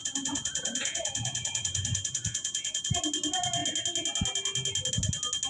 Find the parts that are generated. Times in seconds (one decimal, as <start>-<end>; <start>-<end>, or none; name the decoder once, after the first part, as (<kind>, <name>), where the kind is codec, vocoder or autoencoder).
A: 0.0-3.0 (vocoder, Vocos)